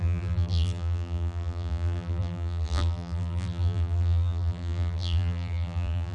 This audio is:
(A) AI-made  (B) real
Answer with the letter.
A